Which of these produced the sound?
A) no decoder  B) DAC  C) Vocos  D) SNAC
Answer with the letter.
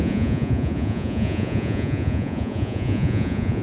C